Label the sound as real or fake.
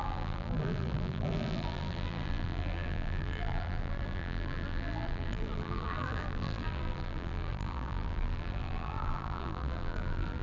fake